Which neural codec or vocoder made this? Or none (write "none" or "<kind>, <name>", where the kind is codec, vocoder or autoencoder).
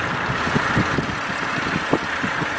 none